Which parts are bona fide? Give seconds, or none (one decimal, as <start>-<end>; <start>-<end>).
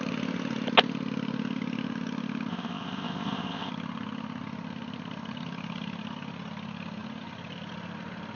0.0-2.5; 3.7-8.3